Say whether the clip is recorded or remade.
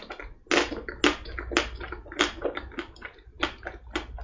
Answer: recorded